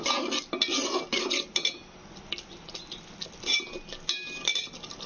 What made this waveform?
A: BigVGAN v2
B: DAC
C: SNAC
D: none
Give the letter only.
D